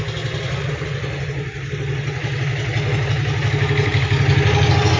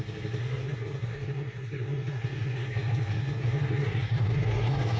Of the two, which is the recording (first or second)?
first